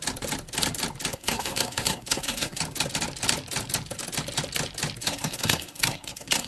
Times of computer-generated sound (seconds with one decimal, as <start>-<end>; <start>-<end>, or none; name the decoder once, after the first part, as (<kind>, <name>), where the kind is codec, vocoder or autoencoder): 1.1-2.6 (codec, SNAC); 5.0-6.5